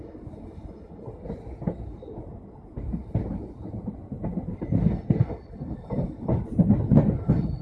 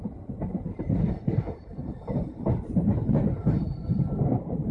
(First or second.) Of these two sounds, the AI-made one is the second